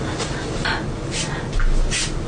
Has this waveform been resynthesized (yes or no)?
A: no